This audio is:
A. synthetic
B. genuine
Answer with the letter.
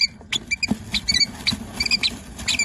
B